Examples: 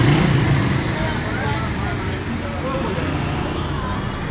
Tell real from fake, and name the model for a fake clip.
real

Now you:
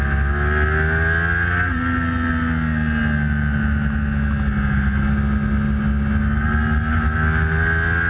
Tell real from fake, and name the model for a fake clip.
real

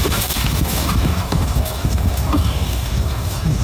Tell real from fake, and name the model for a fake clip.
fake, codec, DAC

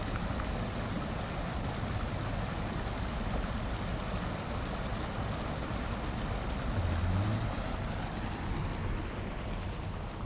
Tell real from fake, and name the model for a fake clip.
real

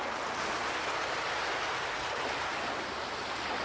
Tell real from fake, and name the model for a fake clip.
real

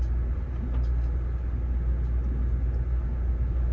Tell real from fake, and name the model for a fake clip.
real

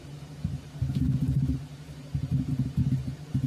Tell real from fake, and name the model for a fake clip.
real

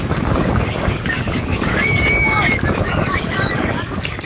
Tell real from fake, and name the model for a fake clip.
fake, codec, DAC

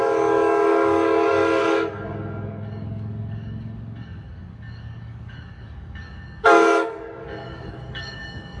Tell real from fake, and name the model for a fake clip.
fake, codec, DAC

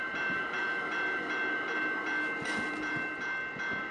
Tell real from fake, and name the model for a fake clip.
real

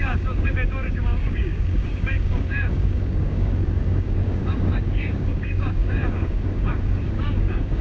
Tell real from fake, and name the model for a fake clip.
fake, codec, DAC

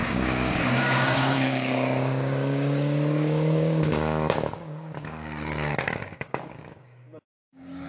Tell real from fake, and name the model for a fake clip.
fake, codec, DAC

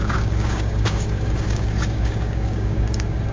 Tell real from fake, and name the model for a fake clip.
fake, codec, DAC